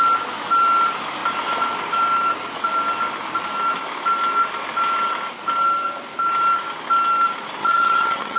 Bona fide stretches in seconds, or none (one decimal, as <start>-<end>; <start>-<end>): 0.0-7.6

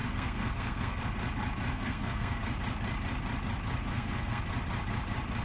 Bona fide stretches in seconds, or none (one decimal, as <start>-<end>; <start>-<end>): 1.0-1.7; 2.4-3.9; 4.4-5.4

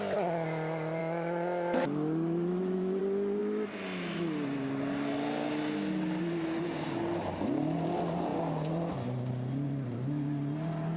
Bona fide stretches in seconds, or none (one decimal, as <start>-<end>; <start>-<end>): 0.0-1.0; 3.0-11.0

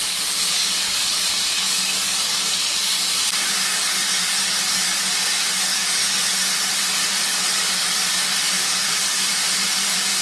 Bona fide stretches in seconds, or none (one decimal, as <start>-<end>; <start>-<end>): none

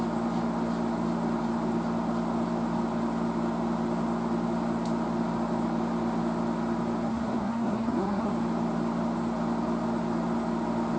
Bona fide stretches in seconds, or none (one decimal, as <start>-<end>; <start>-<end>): 0.0-7.1; 8.3-11.0

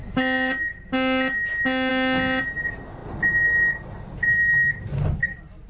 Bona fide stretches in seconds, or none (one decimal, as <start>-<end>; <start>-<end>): 0.0-5.7

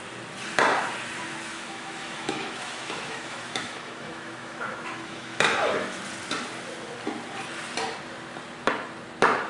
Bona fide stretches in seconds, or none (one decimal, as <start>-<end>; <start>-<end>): 0.0-1.5; 6.0-9.5

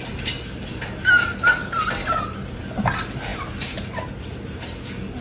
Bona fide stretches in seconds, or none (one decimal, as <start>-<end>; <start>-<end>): 0.0-5.2